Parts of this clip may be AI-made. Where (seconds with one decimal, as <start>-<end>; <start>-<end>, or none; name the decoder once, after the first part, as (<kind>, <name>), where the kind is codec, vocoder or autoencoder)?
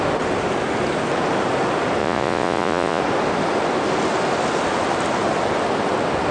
2.0-3.0 (vocoder, Vocos)